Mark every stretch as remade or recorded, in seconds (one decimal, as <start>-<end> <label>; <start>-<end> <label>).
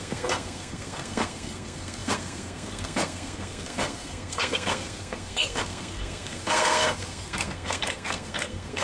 0.0-8.8 remade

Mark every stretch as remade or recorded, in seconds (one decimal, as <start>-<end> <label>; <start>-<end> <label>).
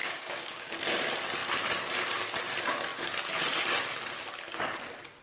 0.0-0.8 remade; 0.8-5.2 recorded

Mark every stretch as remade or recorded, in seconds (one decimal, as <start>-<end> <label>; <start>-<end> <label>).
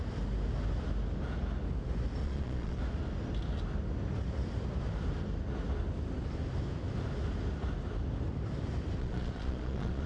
0.0-2.2 recorded; 2.2-2.8 remade; 2.8-9.0 recorded; 9.0-10.1 remade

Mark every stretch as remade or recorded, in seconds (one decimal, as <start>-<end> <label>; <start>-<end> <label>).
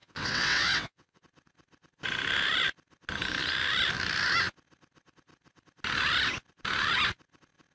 0.0-1.2 remade; 1.2-7.7 recorded